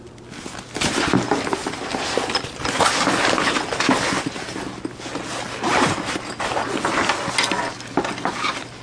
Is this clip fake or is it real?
real